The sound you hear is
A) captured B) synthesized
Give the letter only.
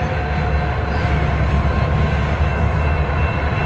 A